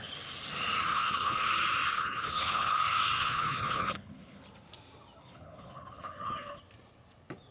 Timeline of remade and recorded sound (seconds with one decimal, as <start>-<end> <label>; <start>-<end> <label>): 0.0-0.9 recorded; 0.9-1.5 remade; 1.5-1.9 recorded; 1.9-2.8 remade; 2.8-3.2 recorded; 3.2-4.4 remade; 4.4-5.2 recorded; 5.2-6.6 remade; 6.6-7.5 recorded